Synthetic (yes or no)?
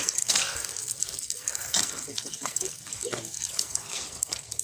yes